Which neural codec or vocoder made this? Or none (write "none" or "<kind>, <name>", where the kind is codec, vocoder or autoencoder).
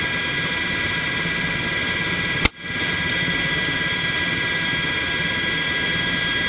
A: none